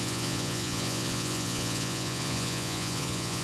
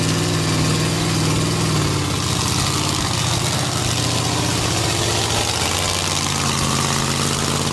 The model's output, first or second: first